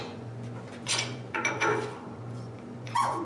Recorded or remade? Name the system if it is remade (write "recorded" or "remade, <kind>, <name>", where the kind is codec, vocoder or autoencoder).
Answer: remade, vocoder, Vocos